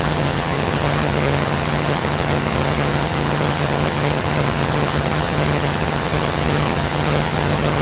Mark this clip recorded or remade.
remade